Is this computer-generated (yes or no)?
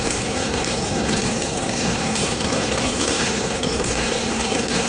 yes